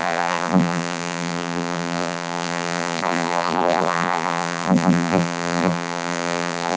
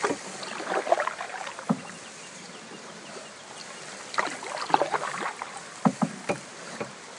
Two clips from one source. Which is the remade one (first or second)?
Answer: first